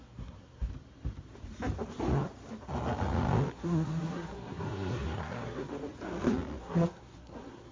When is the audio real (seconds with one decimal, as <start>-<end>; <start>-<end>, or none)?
0.7-3.5; 5.7-6.6